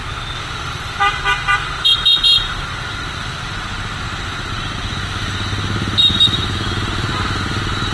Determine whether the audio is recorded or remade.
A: recorded